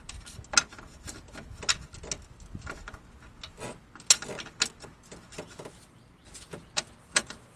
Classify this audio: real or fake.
real